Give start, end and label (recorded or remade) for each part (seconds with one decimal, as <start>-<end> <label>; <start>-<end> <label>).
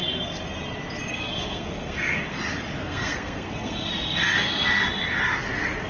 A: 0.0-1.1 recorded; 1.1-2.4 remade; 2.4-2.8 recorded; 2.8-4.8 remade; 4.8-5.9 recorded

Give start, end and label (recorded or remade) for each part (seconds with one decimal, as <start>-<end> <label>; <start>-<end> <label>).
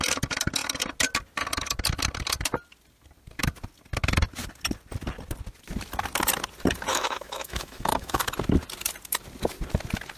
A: 0.0-6.9 recorded; 6.9-8.3 remade; 8.3-10.2 recorded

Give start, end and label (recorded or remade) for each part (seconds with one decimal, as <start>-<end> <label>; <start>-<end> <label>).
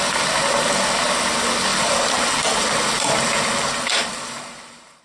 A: 0.0-1.7 recorded; 1.7-5.0 remade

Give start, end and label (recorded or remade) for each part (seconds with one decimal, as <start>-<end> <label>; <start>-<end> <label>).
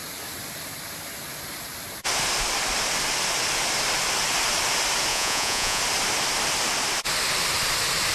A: 0.0-5.1 recorded; 5.1-5.8 remade; 5.8-8.1 recorded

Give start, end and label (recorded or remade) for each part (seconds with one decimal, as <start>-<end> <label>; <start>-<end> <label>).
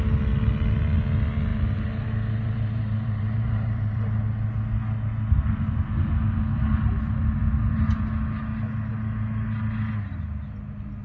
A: 0.0-1.5 recorded; 1.5-4.2 remade; 4.2-11.0 recorded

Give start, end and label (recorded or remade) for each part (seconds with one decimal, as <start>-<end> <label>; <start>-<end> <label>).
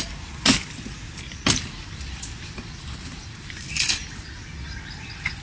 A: 0.0-5.4 recorded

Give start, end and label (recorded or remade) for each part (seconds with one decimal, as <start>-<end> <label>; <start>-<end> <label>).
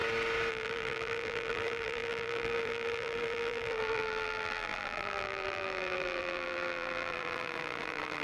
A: 0.0-0.5 recorded; 0.5-8.2 remade